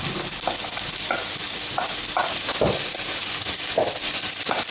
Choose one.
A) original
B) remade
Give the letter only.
A